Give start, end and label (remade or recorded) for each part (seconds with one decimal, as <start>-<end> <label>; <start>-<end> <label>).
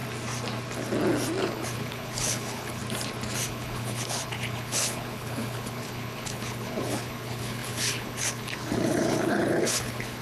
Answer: 0.0-1.4 recorded; 1.4-2.8 remade; 2.8-3.5 recorded; 3.5-10.2 remade